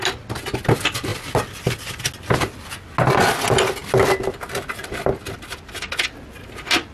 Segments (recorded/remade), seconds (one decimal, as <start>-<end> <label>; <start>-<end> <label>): 0.0-6.9 recorded